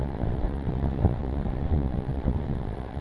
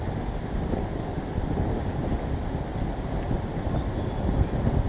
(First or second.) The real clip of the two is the second